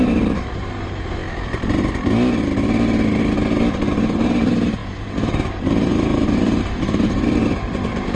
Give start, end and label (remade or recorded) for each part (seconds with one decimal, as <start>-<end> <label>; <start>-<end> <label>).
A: 0.0-1.2 remade; 1.2-4.0 recorded; 4.0-8.2 remade